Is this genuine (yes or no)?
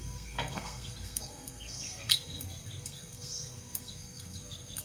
no